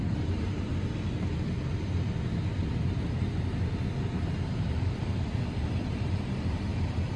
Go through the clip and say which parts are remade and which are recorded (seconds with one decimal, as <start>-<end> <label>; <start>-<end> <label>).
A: 0.0-0.7 remade; 0.7-4.6 recorded; 4.6-7.2 remade